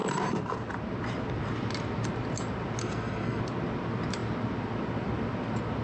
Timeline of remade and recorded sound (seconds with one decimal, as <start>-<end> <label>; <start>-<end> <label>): 0.0-2.8 recorded; 2.8-3.4 remade; 3.4-5.8 recorded